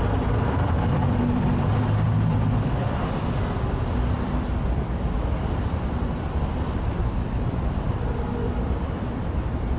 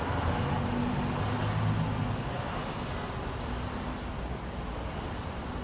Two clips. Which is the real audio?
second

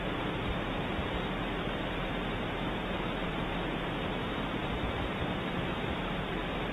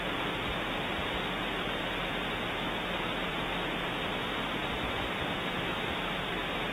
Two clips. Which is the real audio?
second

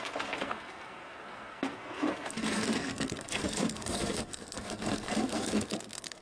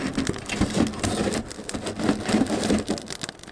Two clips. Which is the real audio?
second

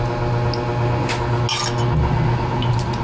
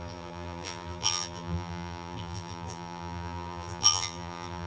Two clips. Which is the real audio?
first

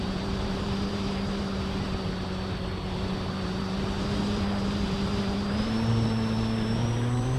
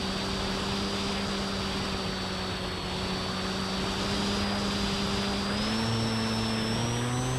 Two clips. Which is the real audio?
second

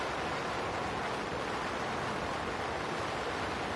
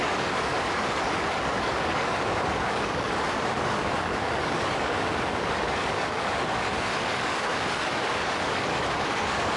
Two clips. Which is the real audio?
first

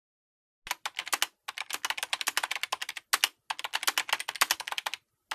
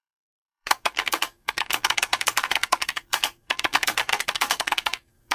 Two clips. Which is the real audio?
first